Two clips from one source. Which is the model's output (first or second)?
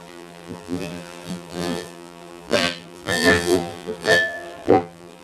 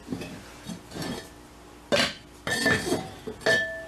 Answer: first